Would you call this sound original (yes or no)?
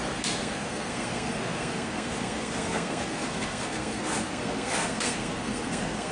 no